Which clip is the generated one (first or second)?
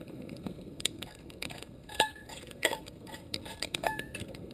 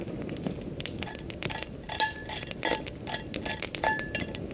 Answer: first